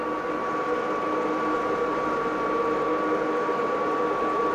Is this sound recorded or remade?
recorded